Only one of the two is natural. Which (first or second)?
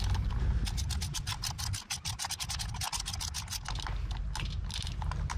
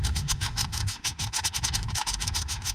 first